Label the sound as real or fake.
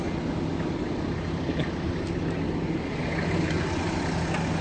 real